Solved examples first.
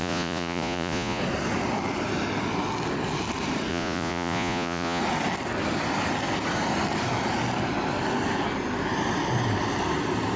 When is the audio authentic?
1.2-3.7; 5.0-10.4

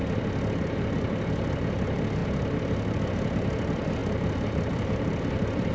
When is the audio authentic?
none

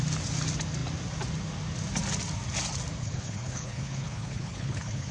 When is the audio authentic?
0.0-3.0

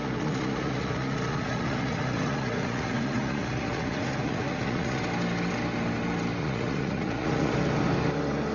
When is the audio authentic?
5.0-6.4; 7.5-8.5

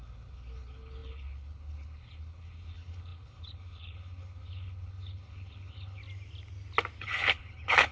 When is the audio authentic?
6.0-7.0

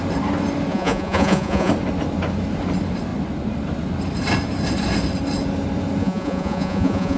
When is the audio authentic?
0.0-0.7; 1.7-6.0

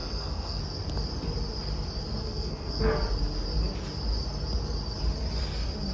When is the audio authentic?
0.6-2.2; 2.9-5.9

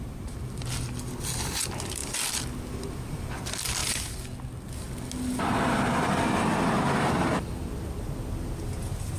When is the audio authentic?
0.0-9.2